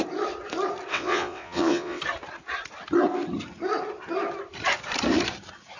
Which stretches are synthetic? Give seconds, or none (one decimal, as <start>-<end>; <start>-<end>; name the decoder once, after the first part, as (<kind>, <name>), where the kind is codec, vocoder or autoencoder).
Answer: 0.9-2.0 (vocoder, WaveNeXt)